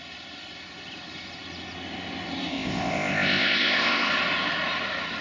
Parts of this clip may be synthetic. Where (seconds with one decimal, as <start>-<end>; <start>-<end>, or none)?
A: 2.5-4.1